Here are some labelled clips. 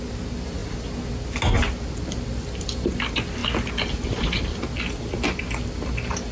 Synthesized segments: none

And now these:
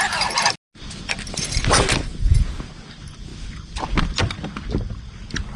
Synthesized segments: 2.1-2.7 (vocoder, Vocos)